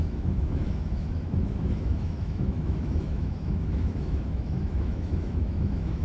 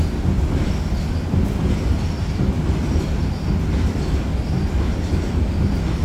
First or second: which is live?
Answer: second